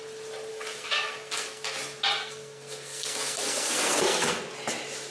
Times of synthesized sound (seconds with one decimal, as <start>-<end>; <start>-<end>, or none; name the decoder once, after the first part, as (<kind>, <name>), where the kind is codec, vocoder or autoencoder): 0.5-1.8 (codec, SNAC); 2.2-4.4